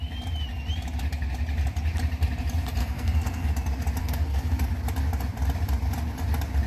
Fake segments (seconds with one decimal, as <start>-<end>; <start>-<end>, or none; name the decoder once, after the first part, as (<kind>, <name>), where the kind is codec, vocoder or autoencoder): 2.8-3.5 (codec, SNAC); 4.0-4.7